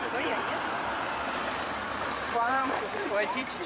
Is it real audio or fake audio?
fake